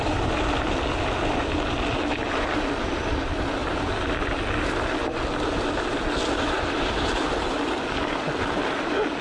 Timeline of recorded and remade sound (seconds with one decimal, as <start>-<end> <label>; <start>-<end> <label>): 0.0-9.2 recorded

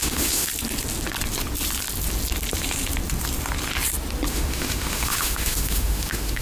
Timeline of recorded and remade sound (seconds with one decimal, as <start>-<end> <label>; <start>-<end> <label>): 0.0-0.5 remade; 0.5-4.3 recorded; 4.3-6.4 remade

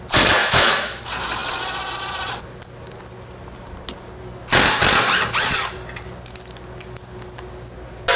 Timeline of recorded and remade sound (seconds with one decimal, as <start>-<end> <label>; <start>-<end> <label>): 0.0-0.4 recorded; 0.4-1.0 remade; 1.0-8.2 recorded

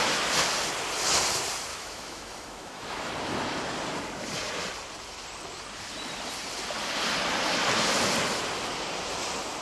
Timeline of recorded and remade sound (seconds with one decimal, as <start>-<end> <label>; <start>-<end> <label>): 0.0-1.7 recorded; 1.7-3.1 remade; 3.1-9.6 recorded

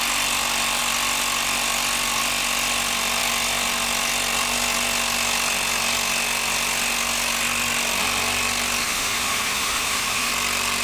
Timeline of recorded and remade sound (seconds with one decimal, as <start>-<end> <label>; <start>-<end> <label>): 0.0-8.8 recorded; 8.8-10.3 remade; 10.3-10.8 recorded